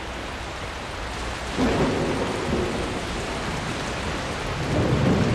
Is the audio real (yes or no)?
yes